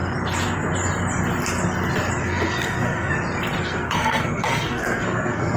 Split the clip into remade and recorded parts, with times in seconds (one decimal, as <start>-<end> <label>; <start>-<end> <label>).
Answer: 0.0-2.2 recorded; 2.2-3.1 remade; 3.1-3.6 recorded; 3.6-5.6 remade